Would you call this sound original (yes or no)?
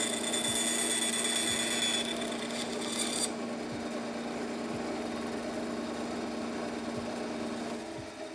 yes